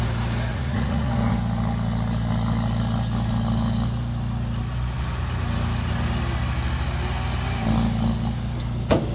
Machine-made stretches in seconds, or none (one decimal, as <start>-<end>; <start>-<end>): 0.5-1.3